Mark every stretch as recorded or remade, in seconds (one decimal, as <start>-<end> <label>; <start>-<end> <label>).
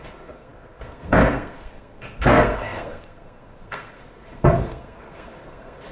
0.0-5.9 remade